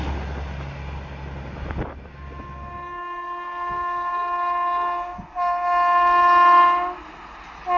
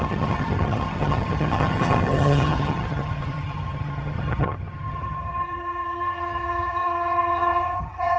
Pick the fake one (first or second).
second